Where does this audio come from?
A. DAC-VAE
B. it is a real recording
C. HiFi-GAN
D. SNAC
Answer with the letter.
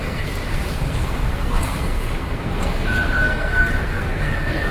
D